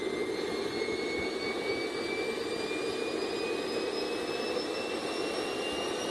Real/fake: real